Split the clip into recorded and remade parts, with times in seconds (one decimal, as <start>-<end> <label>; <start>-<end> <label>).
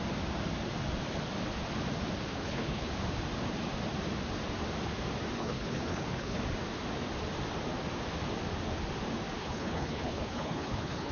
0.0-2.3 recorded; 2.3-2.9 remade; 2.9-5.4 recorded; 5.4-6.4 remade; 6.4-9.4 recorded; 9.4-11.1 remade